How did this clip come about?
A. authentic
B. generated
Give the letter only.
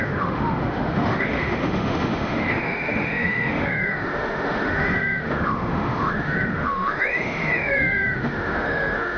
B